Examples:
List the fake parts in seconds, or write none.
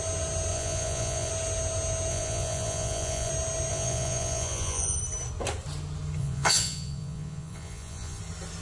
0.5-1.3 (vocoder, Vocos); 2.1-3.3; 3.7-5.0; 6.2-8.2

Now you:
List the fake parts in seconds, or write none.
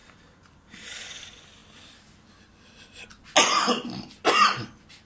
none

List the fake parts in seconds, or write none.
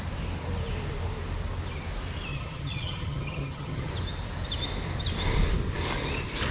2.3-3.9 (vocoder, HiFi-GAN)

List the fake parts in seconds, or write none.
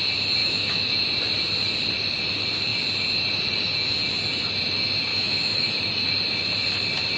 0.4-1.0 (autoencoder, DAC-VAE); 5.1-5.9